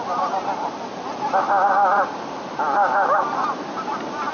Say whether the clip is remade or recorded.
recorded